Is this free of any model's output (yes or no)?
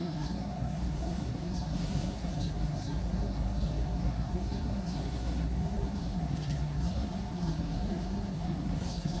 no